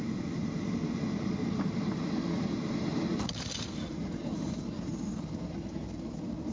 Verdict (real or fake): real